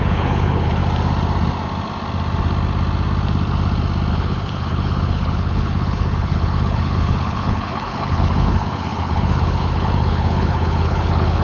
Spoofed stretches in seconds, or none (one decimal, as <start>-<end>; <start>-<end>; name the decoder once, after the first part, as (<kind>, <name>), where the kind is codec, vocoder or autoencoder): 0.0-0.8 (codec, HILCodec); 4.1-11.4